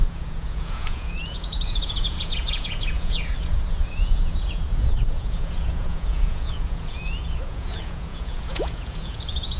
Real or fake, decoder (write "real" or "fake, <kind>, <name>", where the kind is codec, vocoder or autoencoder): fake, vocoder, Vocos